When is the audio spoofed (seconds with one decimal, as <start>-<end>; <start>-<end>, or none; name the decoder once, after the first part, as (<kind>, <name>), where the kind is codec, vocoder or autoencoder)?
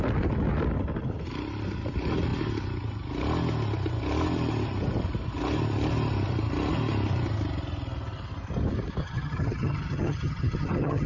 9.0-11.1 (vocoder, HiFi-GAN)